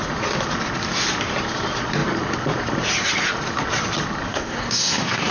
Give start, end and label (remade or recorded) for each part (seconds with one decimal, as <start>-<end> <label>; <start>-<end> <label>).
0.0-4.3 recorded; 4.3-5.3 remade